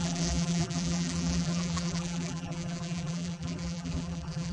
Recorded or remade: remade